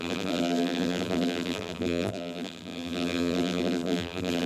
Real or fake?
fake